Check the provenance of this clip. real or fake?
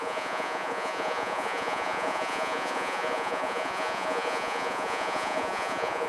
fake